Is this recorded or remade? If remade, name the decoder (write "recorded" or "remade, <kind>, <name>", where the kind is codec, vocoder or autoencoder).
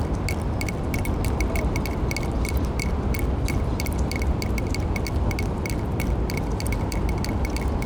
recorded